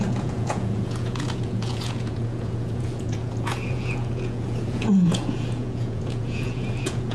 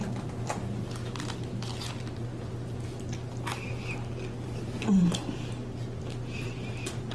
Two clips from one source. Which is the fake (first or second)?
first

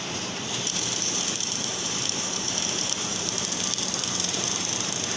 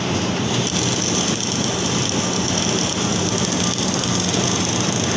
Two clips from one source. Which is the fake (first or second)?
first